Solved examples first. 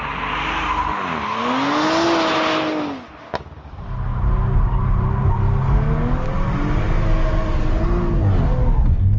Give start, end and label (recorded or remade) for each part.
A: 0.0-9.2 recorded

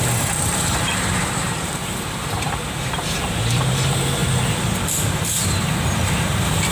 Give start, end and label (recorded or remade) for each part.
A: 0.0-4.2 remade; 4.2-5.1 recorded; 5.1-6.7 remade

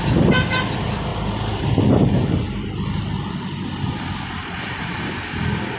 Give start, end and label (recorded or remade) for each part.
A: 0.0-5.8 recorded